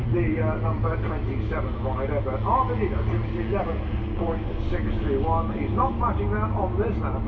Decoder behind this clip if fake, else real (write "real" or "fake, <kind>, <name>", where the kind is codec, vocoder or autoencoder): real